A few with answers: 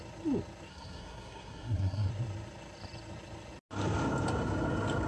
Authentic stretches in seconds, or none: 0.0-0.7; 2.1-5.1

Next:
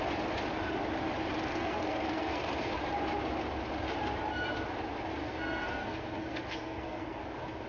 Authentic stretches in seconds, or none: 0.0-1.5; 2.7-5.2; 7.2-7.7

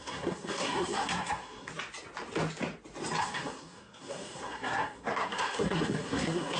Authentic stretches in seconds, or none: 1.7-3.2

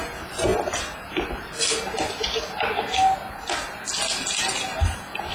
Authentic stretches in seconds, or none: 0.0-5.3

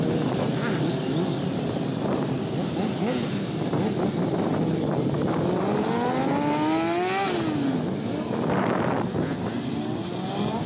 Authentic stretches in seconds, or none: 0.0-10.7

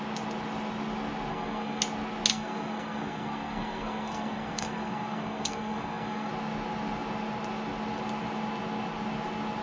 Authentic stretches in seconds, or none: 0.0-1.3; 1.8-2.3; 6.3-9.6